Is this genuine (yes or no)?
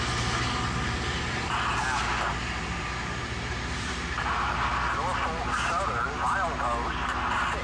yes